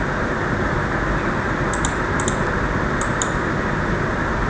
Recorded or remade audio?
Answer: recorded